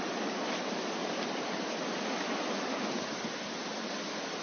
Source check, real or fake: real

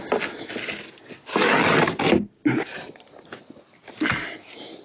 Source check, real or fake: real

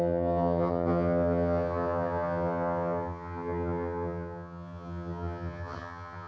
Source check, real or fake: fake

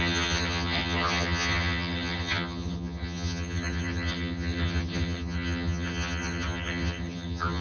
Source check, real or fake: fake